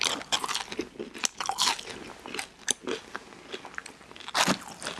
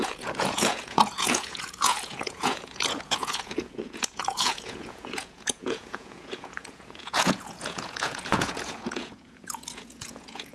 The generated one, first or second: second